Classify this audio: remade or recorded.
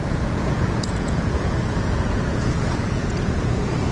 remade